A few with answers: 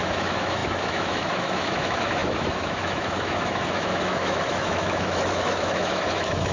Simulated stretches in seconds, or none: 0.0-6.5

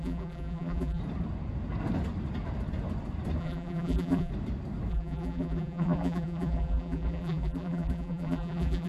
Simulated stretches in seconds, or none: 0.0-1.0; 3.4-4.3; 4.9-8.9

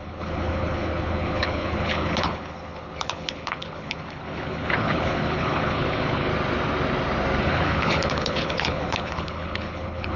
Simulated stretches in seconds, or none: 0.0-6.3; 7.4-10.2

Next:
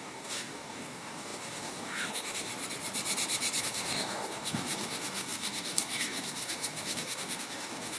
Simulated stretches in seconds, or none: 0.0-2.5; 3.6-8.0

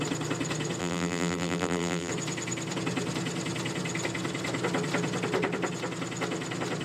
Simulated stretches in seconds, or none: 0.8-2.1

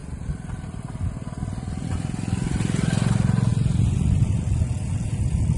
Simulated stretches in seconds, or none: 0.0-1.9

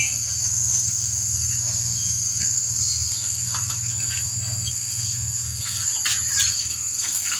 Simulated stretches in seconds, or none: 0.0-5.9; 6.5-7.4